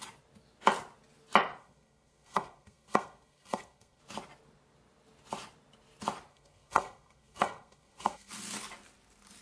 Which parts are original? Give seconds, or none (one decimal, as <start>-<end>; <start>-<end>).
0.0-1.6; 4.0-6.3; 8.3-9.4